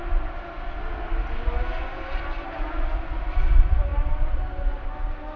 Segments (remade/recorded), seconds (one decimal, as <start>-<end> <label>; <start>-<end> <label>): 0.0-5.4 recorded